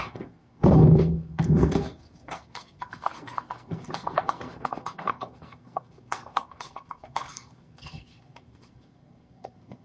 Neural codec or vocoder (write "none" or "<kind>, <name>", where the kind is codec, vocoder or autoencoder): codec, SNAC